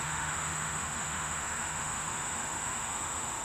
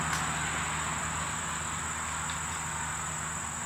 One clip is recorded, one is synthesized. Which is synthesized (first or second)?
first